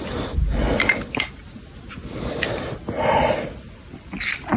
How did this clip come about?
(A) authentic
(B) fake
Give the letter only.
A